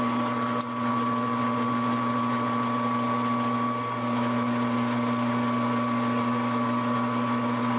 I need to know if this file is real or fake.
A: real